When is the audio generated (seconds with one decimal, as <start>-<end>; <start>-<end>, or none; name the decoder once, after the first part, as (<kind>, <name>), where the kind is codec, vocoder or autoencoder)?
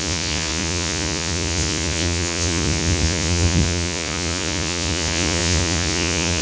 0.0-6.4 (vocoder, Vocos)